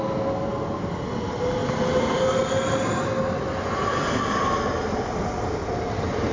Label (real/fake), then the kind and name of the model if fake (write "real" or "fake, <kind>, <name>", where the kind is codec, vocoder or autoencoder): real